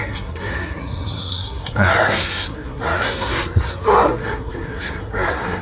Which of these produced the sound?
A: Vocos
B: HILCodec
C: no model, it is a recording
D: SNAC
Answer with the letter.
D